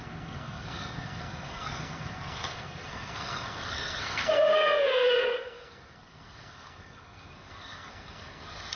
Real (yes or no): no